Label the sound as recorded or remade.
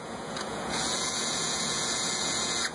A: remade